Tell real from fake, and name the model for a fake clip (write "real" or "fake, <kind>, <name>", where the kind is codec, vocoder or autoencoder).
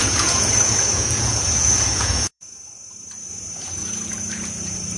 fake, vocoder, Vocos